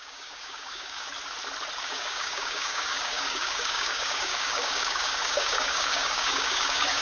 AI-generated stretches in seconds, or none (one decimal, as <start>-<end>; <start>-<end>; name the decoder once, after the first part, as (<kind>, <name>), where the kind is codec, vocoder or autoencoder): 0.0-1.1 (codec, DAC); 1.8-7.0